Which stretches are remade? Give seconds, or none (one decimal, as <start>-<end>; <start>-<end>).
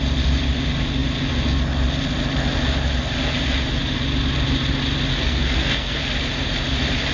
5.1-6.0